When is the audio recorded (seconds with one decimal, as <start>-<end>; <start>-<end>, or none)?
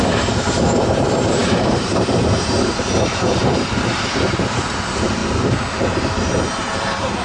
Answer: 5.2-5.9